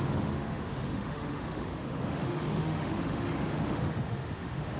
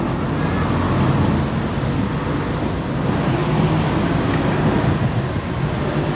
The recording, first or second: second